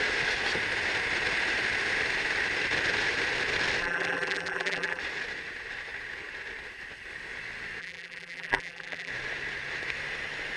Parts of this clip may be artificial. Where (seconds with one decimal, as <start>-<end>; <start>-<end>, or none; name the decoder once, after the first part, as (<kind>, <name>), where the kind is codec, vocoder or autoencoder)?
3.8-5.0 (vocoder, BigVGAN v2); 7.8-9.1